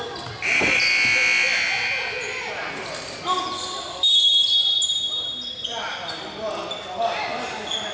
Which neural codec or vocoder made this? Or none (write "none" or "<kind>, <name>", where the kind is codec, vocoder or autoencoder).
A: none